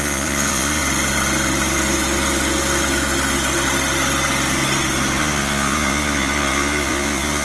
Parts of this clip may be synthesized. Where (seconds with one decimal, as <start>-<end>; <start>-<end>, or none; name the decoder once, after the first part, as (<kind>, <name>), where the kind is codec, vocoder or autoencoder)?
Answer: 0.0-0.8 (vocoder, Vocos); 5.2-7.4